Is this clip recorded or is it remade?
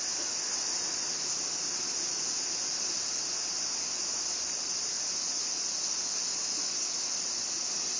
recorded